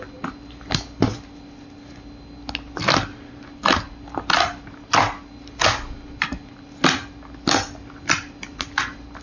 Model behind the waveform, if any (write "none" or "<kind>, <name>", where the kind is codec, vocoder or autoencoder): none